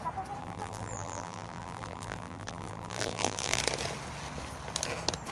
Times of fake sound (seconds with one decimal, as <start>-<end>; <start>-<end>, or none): 0.4-3.6